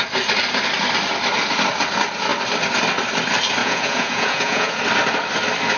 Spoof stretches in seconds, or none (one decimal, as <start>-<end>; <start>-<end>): 3.6-4.8